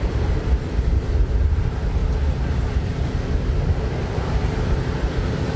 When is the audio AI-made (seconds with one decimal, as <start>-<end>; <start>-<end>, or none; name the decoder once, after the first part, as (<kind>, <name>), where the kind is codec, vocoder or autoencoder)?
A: none